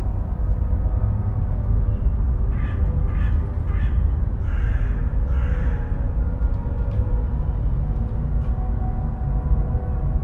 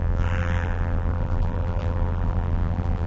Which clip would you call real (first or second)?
first